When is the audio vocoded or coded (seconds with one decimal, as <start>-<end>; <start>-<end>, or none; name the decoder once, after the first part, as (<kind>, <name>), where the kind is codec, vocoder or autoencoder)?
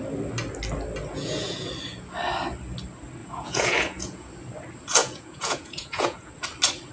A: 1.1-1.7 (vocoder, Vocos); 3.2-4.3; 5.0-6.3